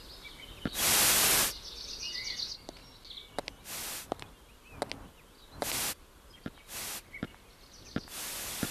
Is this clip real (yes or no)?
yes